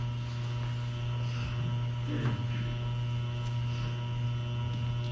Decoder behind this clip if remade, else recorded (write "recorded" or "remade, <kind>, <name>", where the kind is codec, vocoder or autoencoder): recorded